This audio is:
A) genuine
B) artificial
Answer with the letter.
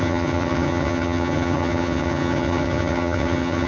B